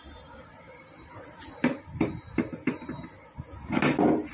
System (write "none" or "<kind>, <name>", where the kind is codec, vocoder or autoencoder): none